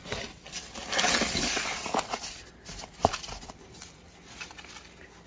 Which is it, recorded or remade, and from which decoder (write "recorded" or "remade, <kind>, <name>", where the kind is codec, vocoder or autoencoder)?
recorded